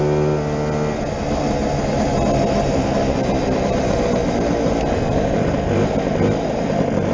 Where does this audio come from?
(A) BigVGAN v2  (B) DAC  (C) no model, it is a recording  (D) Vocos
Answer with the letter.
C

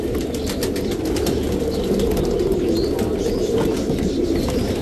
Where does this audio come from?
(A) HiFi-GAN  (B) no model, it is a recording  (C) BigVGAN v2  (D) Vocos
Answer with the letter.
B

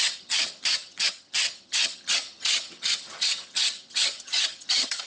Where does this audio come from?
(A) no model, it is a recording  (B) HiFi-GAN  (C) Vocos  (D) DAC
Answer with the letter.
B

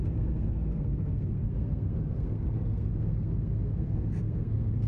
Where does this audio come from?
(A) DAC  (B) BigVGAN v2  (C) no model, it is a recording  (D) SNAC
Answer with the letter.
D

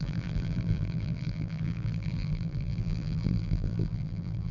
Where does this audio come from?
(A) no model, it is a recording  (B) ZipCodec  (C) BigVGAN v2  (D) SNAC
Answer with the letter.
C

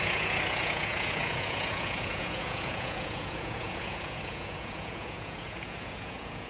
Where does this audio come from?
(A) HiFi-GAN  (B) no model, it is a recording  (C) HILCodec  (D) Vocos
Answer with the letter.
D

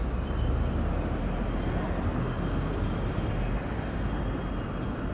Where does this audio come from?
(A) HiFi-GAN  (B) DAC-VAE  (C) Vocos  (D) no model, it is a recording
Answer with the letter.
D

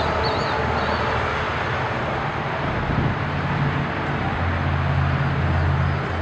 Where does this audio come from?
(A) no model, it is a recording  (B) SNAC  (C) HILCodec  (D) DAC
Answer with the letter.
A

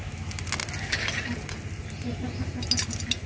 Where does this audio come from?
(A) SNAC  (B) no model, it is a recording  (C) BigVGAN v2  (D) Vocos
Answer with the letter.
B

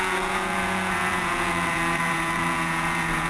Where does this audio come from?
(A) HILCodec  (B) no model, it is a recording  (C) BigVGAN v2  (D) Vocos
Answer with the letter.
D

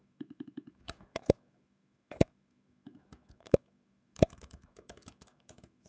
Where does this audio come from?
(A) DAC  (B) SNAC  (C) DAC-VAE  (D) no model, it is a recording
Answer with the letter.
C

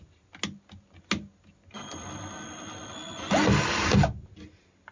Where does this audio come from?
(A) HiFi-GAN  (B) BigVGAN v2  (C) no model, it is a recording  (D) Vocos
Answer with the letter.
C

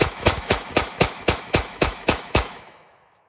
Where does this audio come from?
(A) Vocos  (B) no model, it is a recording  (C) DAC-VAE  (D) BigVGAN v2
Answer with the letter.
C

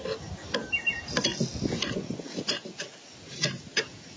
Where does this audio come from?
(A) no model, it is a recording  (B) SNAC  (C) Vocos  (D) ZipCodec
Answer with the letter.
A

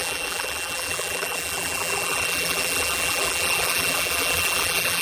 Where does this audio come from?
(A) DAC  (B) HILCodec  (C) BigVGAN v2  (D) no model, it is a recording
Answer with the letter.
C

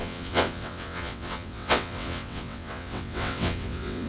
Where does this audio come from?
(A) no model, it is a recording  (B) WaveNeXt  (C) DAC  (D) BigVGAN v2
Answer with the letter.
B